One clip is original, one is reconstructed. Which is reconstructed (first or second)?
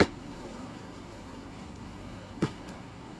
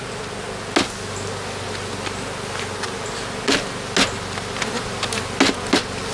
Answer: first